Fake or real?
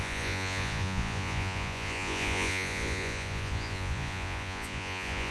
fake